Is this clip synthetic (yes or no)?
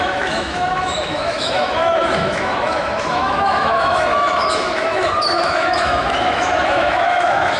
yes